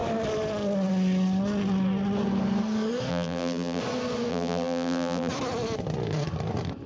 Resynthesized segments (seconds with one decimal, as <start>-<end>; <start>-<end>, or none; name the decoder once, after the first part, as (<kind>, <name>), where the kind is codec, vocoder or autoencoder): 3.1-3.8 (vocoder, BigVGAN v2); 4.3-5.3